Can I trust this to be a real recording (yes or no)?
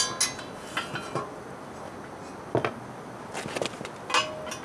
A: yes